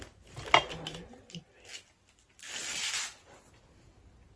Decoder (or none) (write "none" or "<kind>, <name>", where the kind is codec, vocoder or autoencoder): none